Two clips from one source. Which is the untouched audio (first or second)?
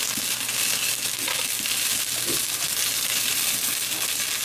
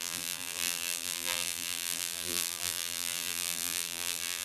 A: first